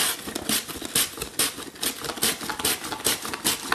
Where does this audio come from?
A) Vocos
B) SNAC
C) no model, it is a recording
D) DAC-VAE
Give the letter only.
C